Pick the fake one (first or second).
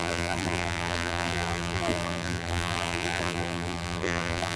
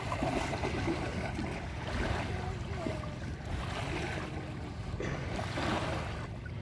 first